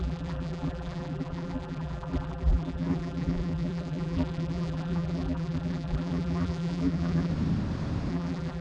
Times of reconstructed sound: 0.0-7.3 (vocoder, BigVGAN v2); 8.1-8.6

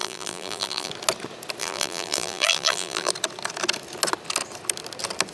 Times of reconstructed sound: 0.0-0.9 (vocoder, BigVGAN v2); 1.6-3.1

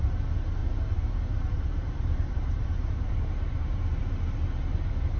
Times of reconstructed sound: 0.6-3.7 (vocoder, BigVGAN v2)